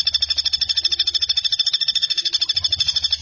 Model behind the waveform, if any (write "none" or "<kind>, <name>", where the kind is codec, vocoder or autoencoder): none